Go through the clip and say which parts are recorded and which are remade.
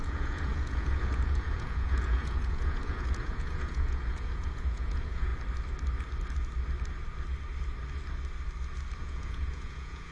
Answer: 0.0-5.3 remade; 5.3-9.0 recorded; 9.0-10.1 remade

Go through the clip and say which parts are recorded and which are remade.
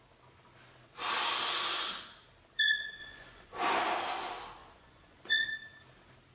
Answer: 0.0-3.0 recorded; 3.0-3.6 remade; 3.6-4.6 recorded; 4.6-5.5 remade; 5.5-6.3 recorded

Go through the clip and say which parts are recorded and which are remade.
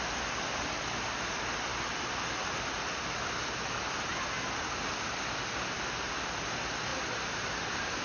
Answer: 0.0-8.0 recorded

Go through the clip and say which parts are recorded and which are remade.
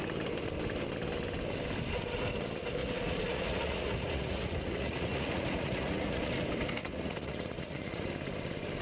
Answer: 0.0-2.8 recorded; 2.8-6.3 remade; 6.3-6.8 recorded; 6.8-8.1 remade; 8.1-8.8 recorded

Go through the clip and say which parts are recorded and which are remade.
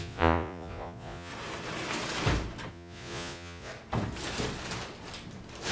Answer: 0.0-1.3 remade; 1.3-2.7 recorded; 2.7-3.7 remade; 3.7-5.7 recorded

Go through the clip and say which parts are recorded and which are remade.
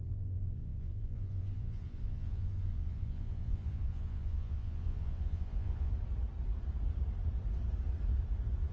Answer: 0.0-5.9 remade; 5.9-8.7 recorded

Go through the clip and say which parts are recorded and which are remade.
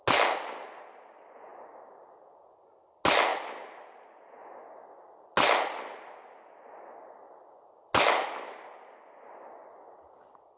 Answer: 0.0-10.6 recorded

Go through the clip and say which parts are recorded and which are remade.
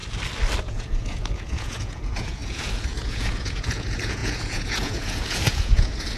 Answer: 0.0-0.6 recorded; 0.6-6.2 remade